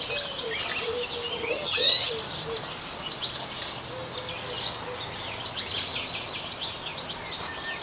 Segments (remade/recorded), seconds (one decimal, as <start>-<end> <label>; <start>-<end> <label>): 0.0-1.3 recorded; 1.3-2.1 remade; 2.1-7.8 recorded